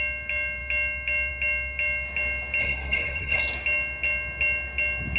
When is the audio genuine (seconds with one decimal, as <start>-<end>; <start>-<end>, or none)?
0.0-2.6; 3.4-5.2